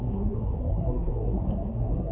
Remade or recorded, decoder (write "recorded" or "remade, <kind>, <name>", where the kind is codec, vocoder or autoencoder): remade, codec, SNAC